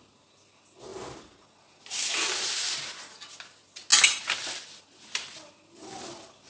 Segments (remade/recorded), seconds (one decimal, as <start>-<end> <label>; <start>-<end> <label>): 0.0-6.5 recorded